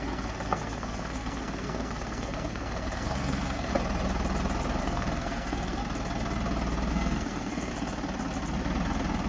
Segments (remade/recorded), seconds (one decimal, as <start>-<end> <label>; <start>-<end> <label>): 0.0-3.7 remade; 3.7-4.8 recorded; 4.8-5.8 remade; 5.8-6.9 recorded; 6.9-7.7 remade; 7.7-9.3 recorded